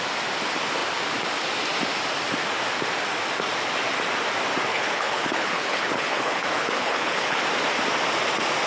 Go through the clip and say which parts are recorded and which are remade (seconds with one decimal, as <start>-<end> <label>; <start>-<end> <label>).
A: 0.0-4.7 recorded; 4.7-7.4 remade; 7.4-8.7 recorded